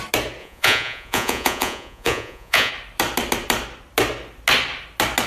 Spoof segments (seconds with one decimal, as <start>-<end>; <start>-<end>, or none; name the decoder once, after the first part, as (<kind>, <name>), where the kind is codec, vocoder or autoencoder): 0.4-2.7 (vocoder, Vocos)